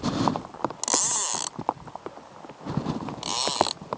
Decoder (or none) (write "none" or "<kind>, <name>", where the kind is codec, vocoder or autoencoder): none